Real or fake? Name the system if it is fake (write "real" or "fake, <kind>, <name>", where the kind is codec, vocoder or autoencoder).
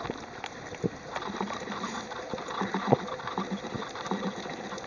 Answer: real